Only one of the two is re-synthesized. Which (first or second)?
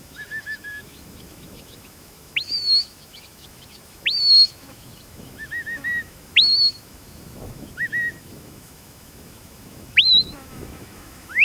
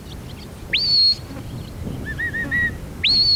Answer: first